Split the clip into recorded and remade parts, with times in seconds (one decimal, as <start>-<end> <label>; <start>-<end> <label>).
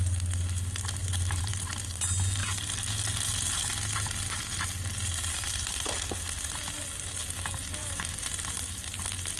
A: 0.0-1.0 recorded; 1.0-1.6 remade; 1.6-7.8 recorded; 7.8-8.3 remade; 8.3-9.4 recorded